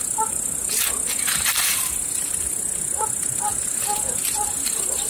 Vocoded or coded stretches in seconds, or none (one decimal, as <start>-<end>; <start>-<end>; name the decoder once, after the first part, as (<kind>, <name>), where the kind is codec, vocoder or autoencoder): none